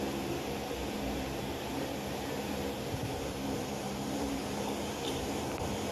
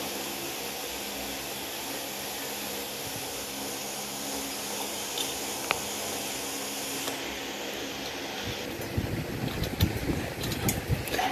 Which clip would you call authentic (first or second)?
second